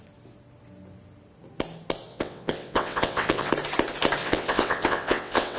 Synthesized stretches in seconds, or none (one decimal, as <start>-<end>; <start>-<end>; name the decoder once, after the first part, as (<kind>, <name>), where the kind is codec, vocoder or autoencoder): 2.1-3.5 (vocoder, WaveNeXt); 4.2-5.6